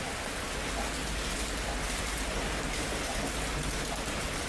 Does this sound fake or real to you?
real